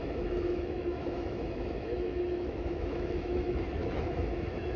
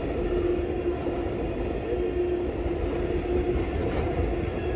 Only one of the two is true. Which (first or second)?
second